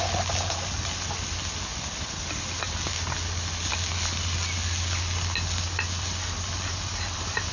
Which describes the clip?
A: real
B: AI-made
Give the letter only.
A